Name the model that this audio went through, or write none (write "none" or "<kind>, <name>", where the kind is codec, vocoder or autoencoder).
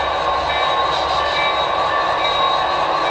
none